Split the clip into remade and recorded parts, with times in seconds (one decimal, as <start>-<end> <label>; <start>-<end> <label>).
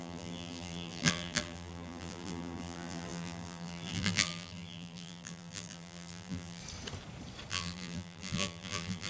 0.0-6.6 remade; 6.6-7.5 recorded; 7.5-9.1 remade